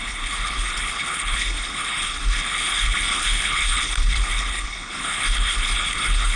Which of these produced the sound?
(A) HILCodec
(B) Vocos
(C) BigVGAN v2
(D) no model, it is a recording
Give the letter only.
A